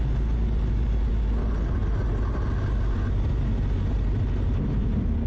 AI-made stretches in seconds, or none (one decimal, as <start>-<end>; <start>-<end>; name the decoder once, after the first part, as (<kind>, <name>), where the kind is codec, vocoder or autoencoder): none